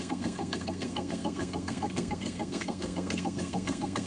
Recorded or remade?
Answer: remade